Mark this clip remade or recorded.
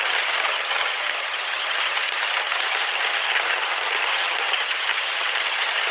remade